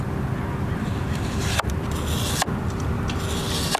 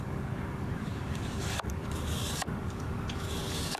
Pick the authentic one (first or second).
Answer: first